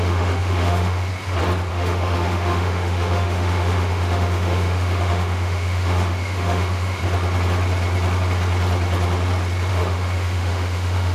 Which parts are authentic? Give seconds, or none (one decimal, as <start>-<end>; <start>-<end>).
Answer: 1.1-1.7; 7.0-9.7